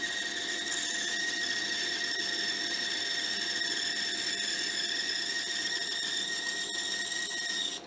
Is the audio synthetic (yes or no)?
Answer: no